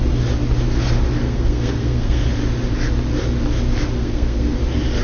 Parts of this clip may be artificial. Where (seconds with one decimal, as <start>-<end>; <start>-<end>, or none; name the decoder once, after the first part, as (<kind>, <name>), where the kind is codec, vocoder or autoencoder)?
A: 1.2-2.3 (codec, SNAC); 4.0-4.6

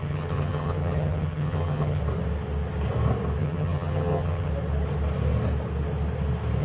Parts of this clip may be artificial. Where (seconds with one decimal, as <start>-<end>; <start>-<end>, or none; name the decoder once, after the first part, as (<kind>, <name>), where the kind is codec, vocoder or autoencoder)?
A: 0.0-2.0 (vocoder, HiFi-GAN); 3.4-4.5

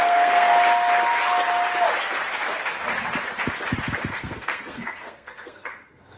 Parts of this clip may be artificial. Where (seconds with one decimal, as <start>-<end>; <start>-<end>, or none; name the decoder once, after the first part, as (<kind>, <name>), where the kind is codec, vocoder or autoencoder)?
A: 0.0-0.5 (codec, SNAC); 4.1-6.2

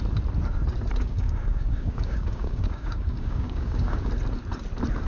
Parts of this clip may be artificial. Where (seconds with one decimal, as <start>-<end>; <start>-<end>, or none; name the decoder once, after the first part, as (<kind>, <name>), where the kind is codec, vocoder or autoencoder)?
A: 1.0-4.1 (codec, DAC)

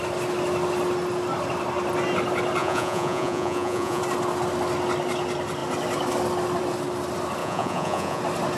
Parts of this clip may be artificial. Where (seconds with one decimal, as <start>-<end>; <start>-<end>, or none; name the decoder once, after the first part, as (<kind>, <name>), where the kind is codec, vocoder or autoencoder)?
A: 2.6-4.0 (vocoder, Vocos); 7.4-8.2